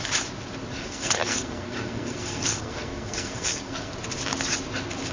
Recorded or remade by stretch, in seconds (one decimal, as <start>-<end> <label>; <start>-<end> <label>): 0.0-0.8 recorded; 0.8-3.9 remade; 3.9-5.1 recorded

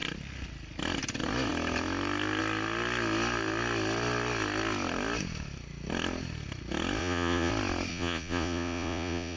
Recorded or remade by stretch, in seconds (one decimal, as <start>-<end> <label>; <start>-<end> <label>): 0.0-7.0 recorded; 7.0-7.5 remade; 7.5-7.9 recorded; 7.9-9.4 remade